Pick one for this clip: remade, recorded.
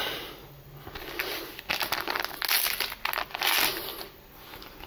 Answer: recorded